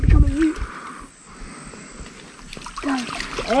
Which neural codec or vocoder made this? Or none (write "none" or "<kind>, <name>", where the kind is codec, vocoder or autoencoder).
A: none